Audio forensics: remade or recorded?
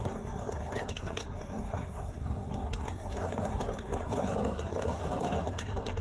remade